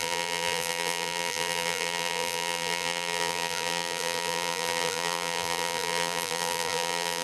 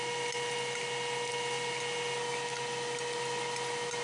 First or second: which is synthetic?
first